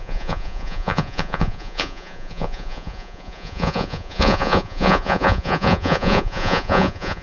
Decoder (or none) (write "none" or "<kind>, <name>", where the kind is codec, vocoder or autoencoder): vocoder, Vocos